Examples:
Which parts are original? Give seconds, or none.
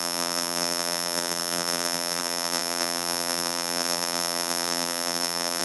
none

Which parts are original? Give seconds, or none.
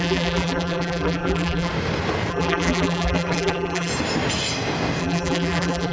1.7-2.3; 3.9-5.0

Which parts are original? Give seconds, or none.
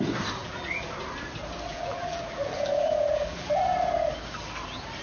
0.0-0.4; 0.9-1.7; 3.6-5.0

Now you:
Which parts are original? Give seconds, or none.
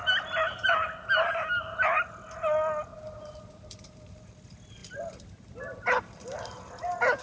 0.0-7.2